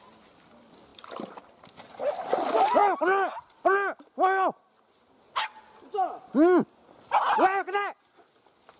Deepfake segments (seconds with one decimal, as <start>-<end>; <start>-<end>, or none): 0.9-1.6